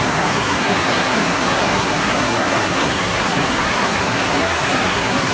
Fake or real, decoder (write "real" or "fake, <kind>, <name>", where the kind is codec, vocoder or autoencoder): fake, codec, SNAC